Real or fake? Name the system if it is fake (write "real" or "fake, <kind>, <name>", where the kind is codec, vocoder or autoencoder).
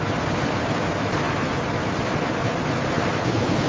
real